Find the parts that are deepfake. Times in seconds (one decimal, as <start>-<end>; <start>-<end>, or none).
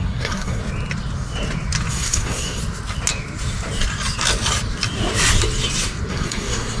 0.0-0.6; 1.9-2.6; 6.1-6.8